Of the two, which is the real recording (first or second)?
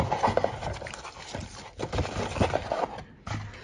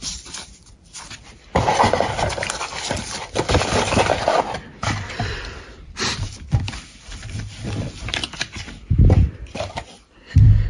first